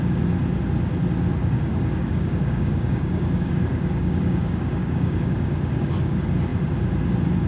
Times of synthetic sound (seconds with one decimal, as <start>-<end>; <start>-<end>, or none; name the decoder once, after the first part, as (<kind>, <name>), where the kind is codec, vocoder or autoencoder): 1.4-5.9 (codec, DAC)